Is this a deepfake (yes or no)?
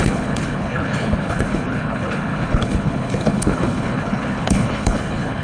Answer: yes